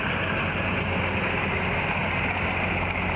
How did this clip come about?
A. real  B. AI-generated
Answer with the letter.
A